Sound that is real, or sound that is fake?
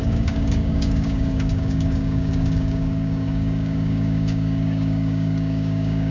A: fake